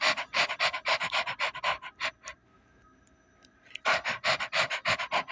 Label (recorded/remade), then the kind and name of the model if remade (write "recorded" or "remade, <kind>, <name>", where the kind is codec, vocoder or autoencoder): recorded